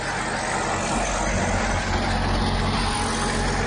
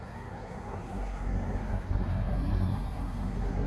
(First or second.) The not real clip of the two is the second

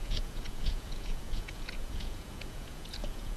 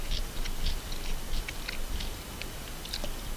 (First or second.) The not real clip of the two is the first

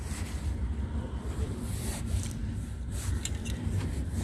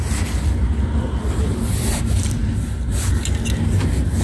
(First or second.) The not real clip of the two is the first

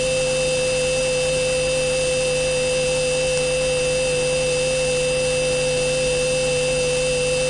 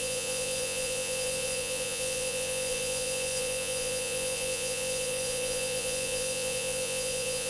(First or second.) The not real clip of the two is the second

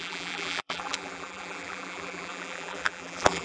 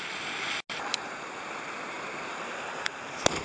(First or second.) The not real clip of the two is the first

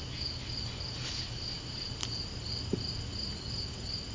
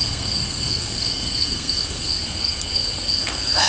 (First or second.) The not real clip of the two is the second